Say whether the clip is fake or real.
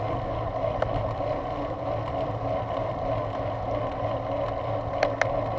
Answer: real